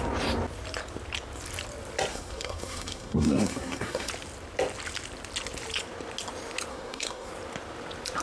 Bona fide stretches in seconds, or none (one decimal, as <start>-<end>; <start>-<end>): 0.0-2.1; 4.1-6.7; 7.3-8.2